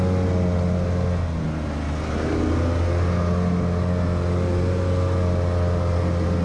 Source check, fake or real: real